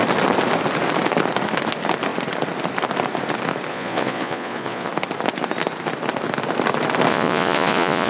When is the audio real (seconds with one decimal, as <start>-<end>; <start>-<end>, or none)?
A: 0.0-3.7; 4.9-7.1